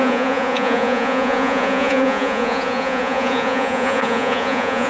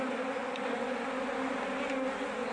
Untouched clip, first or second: second